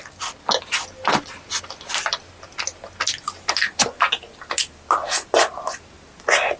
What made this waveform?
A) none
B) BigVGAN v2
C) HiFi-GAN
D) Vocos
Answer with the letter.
A